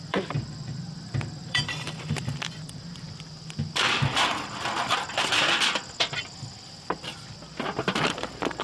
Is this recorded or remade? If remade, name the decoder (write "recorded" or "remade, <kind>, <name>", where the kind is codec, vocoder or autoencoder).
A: remade, vocoder, BigVGAN v2